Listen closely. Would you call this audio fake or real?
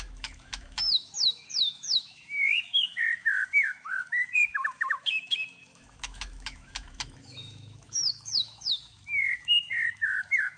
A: fake